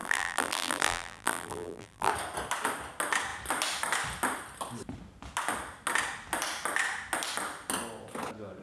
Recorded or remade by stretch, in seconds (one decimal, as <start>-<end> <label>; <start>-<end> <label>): 0.0-2.1 remade; 2.1-8.6 recorded